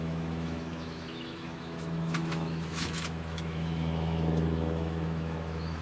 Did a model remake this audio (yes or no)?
yes